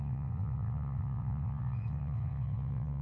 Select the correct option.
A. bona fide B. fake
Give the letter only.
B